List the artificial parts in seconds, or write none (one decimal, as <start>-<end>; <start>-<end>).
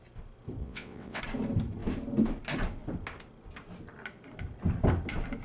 0.6-1.2